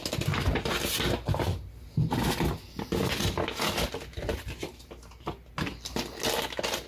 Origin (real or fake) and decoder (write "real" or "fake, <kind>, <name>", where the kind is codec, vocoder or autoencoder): real